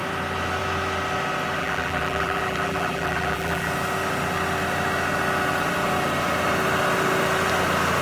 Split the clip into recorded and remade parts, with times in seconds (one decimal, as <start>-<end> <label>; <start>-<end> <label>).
0.0-1.6 recorded; 1.6-3.7 remade; 3.7-8.0 recorded